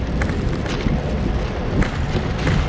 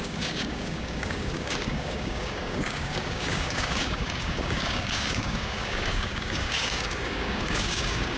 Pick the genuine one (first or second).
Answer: first